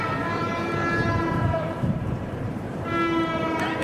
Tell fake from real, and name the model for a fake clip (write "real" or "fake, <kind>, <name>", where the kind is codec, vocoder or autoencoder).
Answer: fake, vocoder, BigVGAN v2